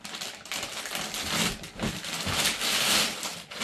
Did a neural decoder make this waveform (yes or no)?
no